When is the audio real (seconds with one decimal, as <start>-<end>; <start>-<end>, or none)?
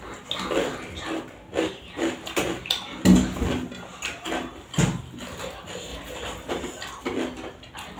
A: 0.0-8.0